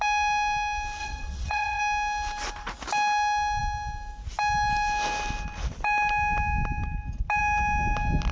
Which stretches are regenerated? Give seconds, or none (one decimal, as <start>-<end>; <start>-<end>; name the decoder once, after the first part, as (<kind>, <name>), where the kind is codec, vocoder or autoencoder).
1.0-1.8 (vocoder, WaveNeXt)